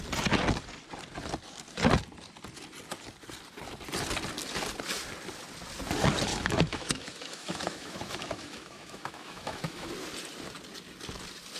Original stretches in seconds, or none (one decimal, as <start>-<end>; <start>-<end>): 0.0-6.3; 9.9-11.6